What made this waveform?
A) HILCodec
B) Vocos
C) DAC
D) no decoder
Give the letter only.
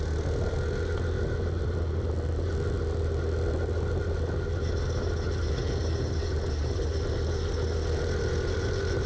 D